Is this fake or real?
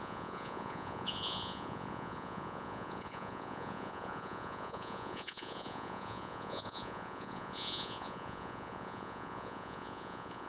fake